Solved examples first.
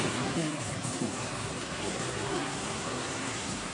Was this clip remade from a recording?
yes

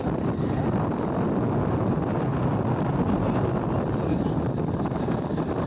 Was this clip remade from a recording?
no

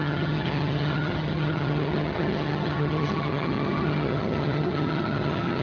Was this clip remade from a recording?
yes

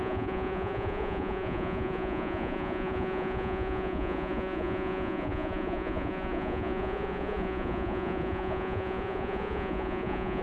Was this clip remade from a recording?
yes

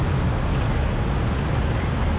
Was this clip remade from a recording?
no